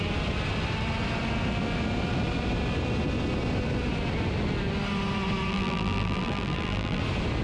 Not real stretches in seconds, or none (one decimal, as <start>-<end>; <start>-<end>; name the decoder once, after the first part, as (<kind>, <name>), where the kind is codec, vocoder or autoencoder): 5.5-7.0 (vocoder, BigVGAN v2)